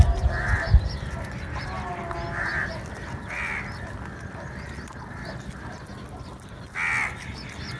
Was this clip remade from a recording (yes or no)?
no